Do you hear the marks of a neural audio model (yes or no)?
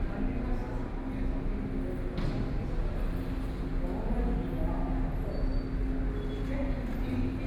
no